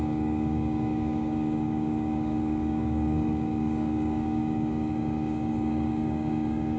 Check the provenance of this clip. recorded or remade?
remade